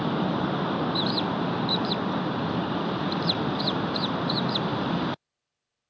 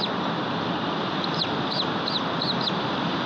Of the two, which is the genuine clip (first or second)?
second